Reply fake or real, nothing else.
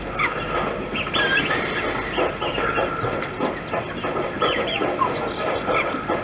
real